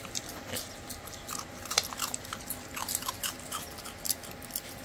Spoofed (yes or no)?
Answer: no